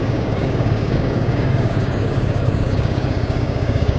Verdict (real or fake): fake